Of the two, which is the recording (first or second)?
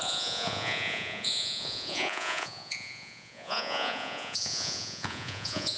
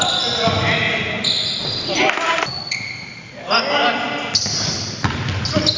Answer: second